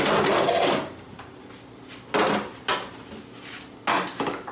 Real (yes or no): yes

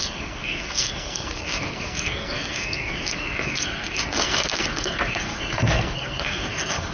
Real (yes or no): no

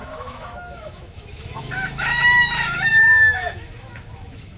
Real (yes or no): no